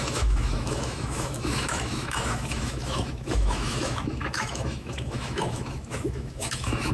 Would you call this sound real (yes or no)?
no